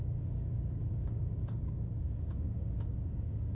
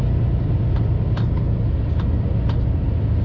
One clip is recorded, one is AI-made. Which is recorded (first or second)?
second